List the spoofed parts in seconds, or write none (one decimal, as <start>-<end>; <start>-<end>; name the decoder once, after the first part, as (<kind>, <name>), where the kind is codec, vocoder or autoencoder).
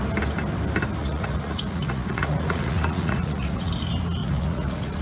1.0-3.7 (vocoder, Vocos); 4.2-5.0